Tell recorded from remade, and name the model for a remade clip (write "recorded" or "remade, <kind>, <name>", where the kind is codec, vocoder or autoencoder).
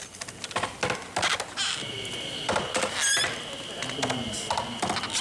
recorded